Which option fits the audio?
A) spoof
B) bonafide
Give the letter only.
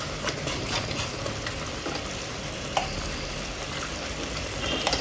A